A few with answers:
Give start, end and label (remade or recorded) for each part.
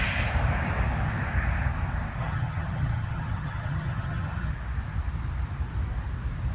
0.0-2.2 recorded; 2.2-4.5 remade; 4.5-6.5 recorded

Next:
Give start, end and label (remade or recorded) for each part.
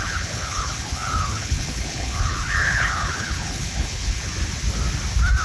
0.0-4.3 remade; 4.3-5.4 recorded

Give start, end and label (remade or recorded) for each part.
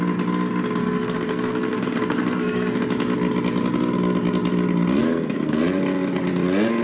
0.0-0.8 recorded; 0.8-2.8 remade; 2.8-5.0 recorded; 5.0-5.6 remade; 5.6-6.8 recorded